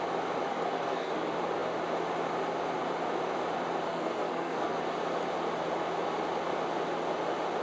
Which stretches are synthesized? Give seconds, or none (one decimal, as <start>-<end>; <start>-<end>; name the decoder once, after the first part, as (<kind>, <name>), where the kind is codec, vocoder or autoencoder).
0.5-1.1 (codec, SNAC); 3.9-4.8